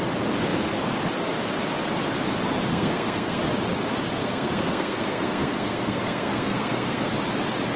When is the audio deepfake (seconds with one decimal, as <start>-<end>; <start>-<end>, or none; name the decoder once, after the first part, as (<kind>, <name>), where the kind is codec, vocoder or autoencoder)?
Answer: 2.7-3.4 (codec, SNAC); 4.2-7.1